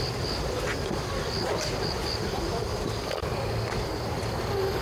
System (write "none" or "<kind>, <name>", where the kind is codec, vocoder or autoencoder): none